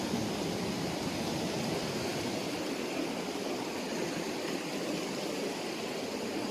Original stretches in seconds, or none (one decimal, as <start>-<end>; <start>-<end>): 0.0-6.5